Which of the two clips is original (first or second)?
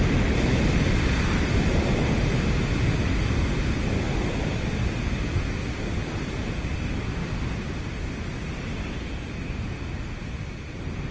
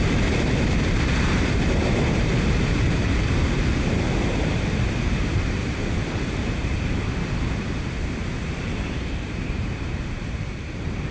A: first